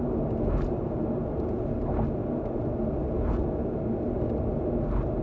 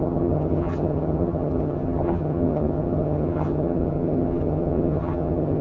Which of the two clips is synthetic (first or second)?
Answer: second